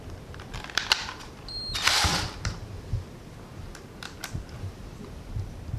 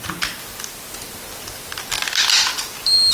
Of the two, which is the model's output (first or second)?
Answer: first